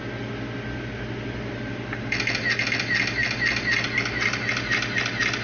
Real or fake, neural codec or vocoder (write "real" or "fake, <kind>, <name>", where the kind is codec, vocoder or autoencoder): real